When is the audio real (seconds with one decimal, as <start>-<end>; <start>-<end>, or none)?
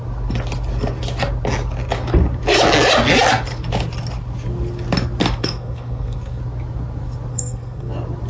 0.0-5.4; 6.4-7.3; 7.9-8.3